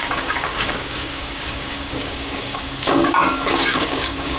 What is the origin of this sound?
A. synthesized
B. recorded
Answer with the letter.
A